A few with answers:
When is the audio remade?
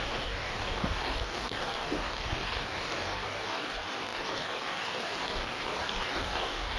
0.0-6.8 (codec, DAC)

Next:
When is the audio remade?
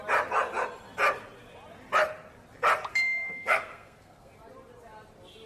2.9-4.3 (codec, SNAC)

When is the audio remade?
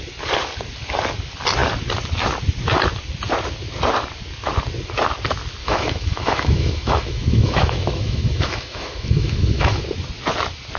5.6-9.8 (autoencoder, DAC-VAE)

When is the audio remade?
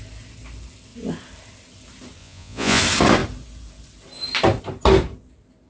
2.2-2.8 (vocoder, Vocos)